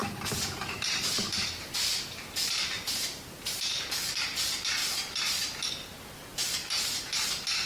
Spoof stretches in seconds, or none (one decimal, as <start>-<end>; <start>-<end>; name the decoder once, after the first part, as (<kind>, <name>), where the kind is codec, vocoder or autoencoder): 0.0-3.6 (vocoder, BigVGAN v2)